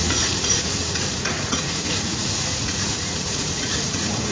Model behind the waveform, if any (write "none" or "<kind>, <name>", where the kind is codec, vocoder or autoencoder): vocoder, Vocos